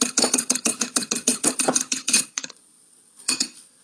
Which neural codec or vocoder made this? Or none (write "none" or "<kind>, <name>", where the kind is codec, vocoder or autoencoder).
vocoder, Vocos